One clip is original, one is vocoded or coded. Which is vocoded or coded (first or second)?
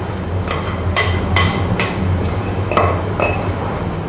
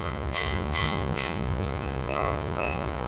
second